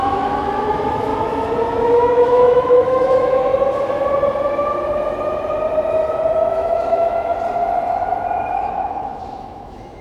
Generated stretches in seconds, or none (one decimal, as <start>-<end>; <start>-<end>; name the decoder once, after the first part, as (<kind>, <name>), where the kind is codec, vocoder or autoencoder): 0.0-1.1 (autoencoder, DAC-VAE); 1.9-3.5; 6.5-7.3; 8.5-10.0